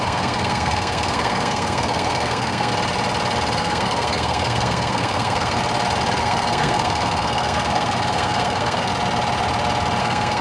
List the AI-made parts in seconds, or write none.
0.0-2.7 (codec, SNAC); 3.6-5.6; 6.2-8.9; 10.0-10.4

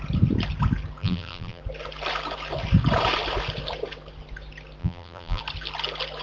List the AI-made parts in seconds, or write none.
1.0-1.6 (vocoder, BigVGAN v2); 4.8-5.4

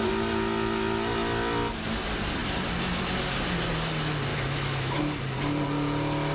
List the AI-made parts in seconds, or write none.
4.3-5.0 (autoencoder, DAC-VAE)

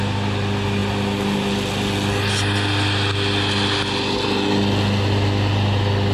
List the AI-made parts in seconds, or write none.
none

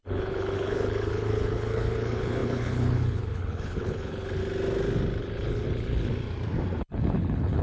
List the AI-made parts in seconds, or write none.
0.0-4.4 (codec, HILCodec); 5.2-6.1; 6.8-7.6

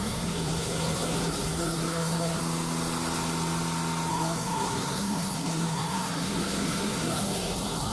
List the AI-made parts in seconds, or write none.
0.0-2.4 (codec, SNAC); 4.1-7.9

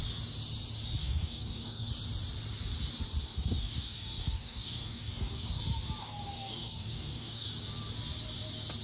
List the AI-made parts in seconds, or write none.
1.0-1.9 (codec, DAC); 3.2-5.6; 6.0-7.5

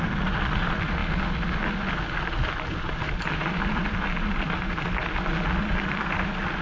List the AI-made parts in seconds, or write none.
0.0-1.0 (vocoder, BigVGAN v2); 2.8-6.6